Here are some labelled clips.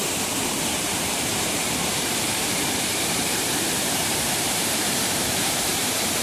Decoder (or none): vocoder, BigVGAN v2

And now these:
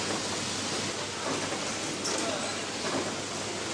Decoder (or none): none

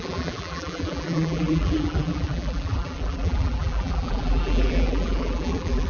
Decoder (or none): vocoder, BigVGAN v2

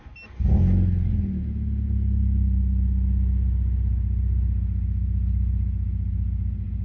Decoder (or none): none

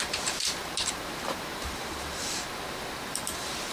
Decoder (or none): vocoder, BigVGAN v2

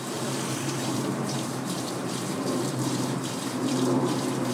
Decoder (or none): vocoder, BigVGAN v2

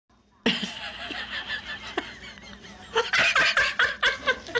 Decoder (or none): none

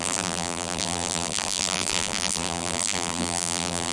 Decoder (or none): vocoder, BigVGAN v2